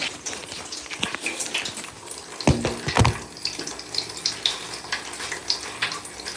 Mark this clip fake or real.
real